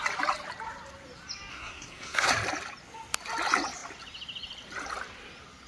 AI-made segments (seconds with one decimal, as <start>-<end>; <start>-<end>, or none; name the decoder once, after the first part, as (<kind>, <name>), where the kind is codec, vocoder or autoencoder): 1.5-2.3 (codec, SNAC)